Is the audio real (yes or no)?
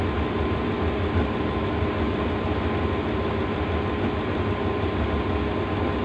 yes